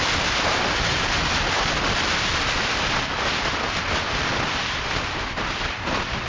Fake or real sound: real